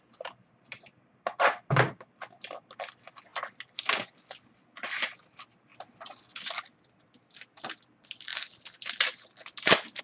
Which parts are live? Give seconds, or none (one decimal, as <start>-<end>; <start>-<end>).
0.0-10.0

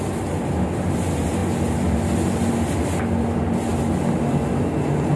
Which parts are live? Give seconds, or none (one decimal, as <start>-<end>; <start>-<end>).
0.0-5.2

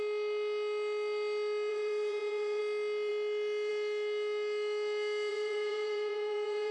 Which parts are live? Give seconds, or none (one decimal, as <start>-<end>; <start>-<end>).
0.0-1.7; 2.6-5.3

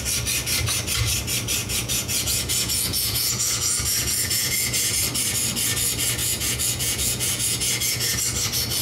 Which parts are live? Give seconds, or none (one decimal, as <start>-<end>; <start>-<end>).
0.0-1.6; 5.0-6.2; 8.2-8.8

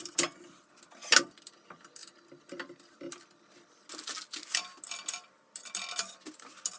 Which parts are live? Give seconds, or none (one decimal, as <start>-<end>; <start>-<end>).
0.0-6.8